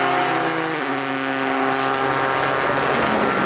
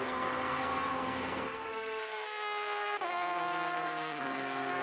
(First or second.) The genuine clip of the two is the first